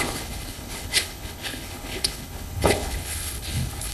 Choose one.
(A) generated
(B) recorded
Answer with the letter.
A